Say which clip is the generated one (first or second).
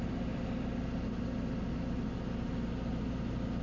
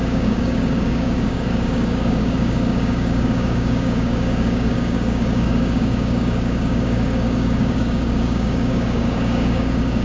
second